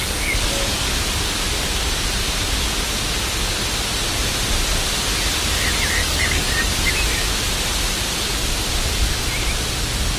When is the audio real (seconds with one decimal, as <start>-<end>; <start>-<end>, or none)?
0.9-6.0; 6.9-10.2